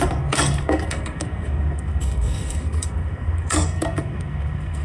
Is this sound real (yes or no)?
no